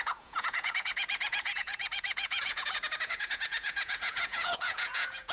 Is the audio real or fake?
fake